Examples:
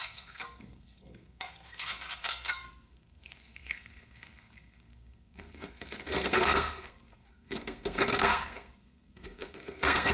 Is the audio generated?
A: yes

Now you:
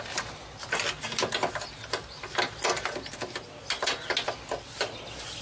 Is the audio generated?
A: no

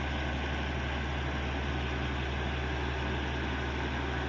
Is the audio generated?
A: no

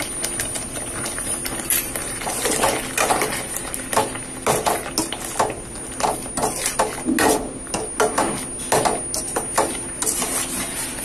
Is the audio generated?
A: no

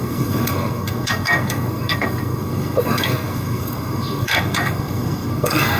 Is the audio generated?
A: yes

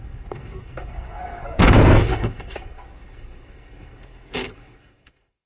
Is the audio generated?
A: yes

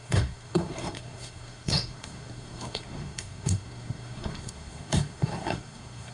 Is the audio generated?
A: yes